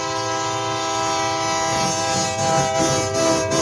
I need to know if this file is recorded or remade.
recorded